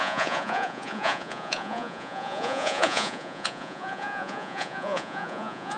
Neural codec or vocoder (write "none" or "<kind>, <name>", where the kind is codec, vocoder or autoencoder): vocoder, Vocos